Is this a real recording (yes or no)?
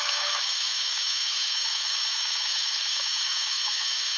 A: no